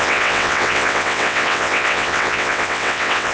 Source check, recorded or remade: remade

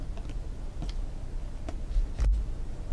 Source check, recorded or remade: recorded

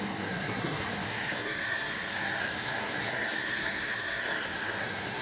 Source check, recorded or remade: remade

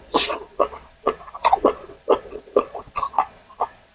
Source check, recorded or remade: remade